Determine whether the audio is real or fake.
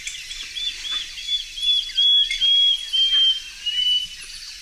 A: real